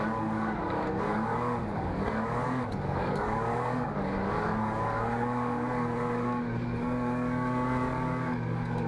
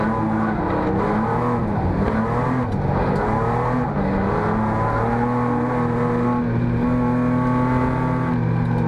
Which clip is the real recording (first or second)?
second